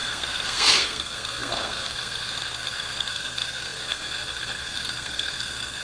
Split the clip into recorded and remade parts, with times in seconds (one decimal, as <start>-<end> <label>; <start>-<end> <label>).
0.0-5.8 remade